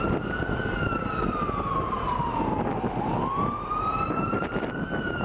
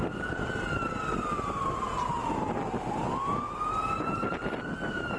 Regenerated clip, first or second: first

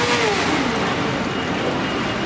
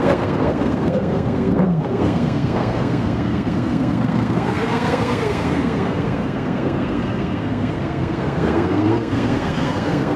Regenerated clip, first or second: second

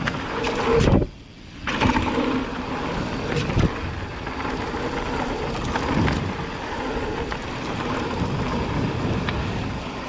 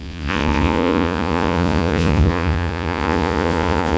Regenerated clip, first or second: second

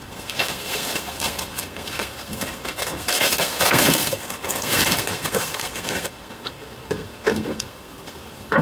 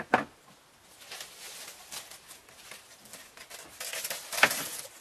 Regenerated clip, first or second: first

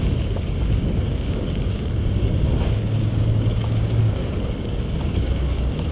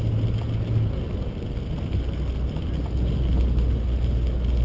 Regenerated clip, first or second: first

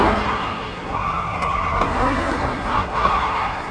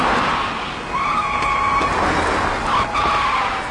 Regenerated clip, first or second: first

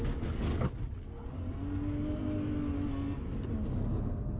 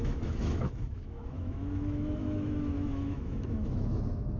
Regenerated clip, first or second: second